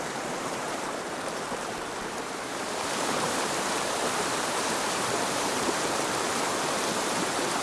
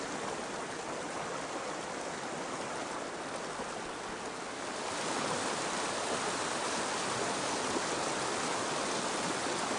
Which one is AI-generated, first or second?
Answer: first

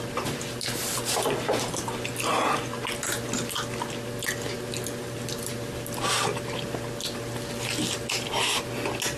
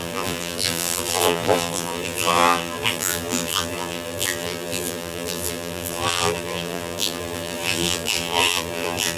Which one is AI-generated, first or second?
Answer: second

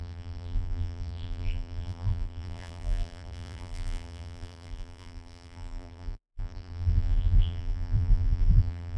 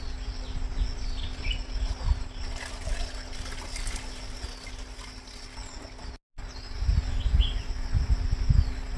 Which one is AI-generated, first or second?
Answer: first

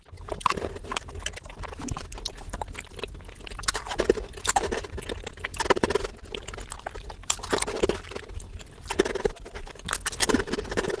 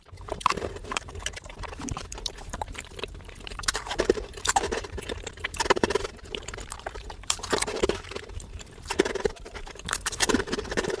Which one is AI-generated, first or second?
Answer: second